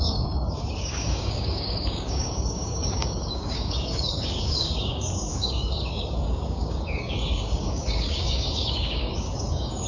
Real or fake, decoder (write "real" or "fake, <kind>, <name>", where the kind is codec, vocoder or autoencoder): fake, codec, DAC